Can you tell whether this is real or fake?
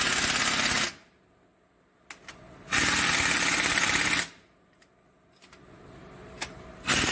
real